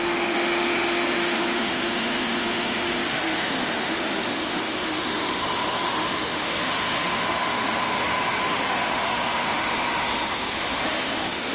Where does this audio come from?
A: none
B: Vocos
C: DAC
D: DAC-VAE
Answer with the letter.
D